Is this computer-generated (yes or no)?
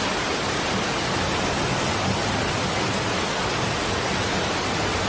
no